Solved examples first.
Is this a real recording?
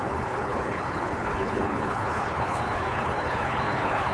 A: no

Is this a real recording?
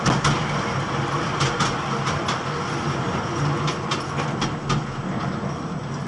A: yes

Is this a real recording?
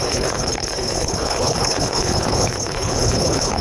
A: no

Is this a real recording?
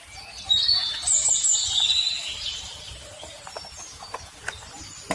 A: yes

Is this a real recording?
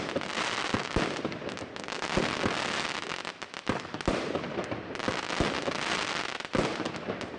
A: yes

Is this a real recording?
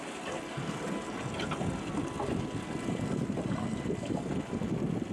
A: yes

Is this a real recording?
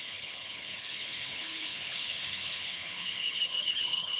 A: no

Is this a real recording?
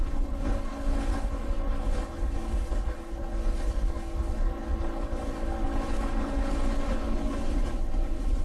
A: no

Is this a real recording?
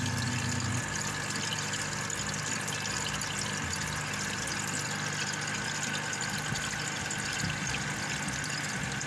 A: yes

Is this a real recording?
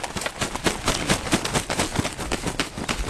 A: yes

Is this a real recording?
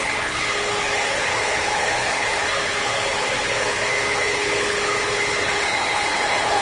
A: no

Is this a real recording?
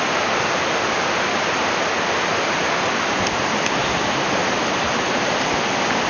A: yes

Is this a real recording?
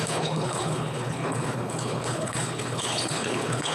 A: no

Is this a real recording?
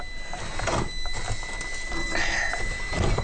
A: yes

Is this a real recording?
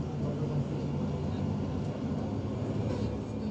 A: yes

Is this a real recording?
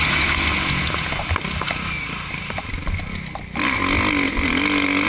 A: yes